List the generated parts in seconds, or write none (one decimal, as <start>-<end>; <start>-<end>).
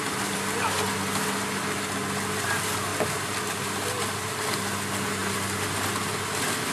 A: none